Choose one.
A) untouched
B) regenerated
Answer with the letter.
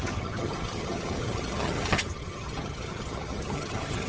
B